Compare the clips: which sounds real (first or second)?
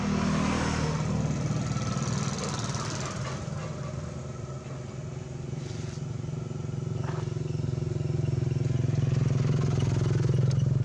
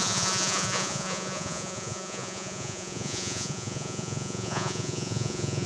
first